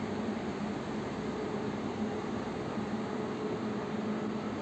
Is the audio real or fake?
real